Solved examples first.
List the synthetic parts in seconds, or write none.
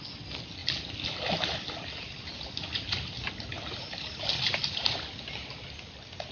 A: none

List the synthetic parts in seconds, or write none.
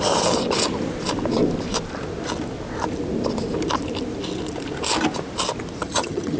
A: 5.8-6.4 (vocoder, HiFi-GAN)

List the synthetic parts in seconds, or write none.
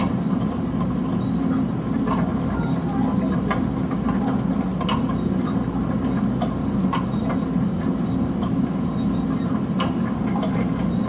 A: none